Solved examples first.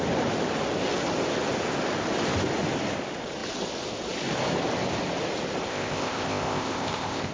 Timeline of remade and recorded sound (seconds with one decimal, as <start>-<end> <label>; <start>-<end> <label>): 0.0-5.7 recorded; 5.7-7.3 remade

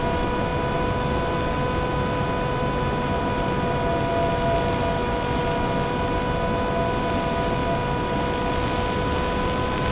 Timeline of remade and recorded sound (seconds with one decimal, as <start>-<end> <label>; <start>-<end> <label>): 0.0-9.9 recorded

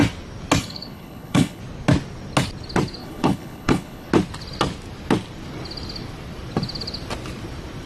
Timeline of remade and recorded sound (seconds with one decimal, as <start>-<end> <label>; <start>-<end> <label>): 0.0-0.6 recorded; 0.6-1.6 remade; 1.6-3.0 recorded; 3.0-4.1 remade; 4.1-7.9 recorded

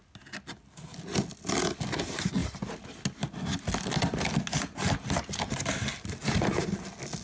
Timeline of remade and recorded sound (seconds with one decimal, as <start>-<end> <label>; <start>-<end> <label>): 0.0-7.2 recorded

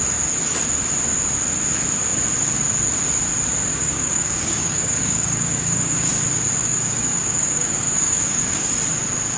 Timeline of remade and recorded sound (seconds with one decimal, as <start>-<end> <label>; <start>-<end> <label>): 0.0-3.7 recorded; 3.7-6.1 remade; 6.1-6.6 recorded; 6.6-8.7 remade; 8.7-9.4 recorded

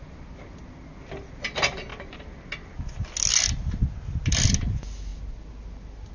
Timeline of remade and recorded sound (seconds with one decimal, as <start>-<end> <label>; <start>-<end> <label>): 0.0-6.1 recorded

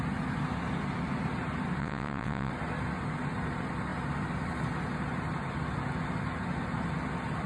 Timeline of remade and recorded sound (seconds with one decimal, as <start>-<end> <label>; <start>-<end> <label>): 0.0-1.8 recorded; 1.8-2.5 remade; 2.5-7.5 recorded

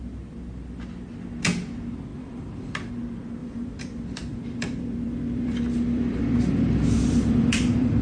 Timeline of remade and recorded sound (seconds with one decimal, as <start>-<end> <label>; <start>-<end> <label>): 0.0-2.1 recorded; 2.1-2.9 remade; 2.9-3.4 recorded; 3.4-8.0 remade